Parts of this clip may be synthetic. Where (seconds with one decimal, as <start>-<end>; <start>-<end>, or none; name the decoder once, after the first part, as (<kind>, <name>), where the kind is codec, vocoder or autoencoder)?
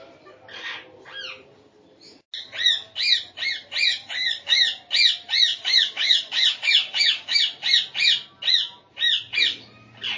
3.9-4.6 (codec, DAC); 5.5-7.4